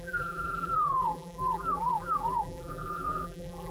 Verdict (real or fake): fake